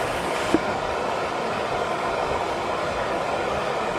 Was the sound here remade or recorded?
remade